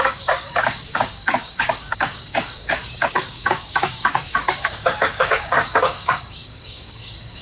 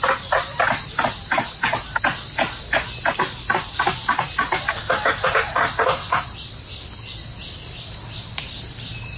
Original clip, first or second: second